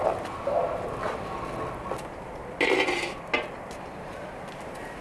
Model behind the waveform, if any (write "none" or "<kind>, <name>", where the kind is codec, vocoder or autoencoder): none